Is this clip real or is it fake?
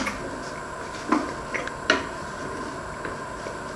real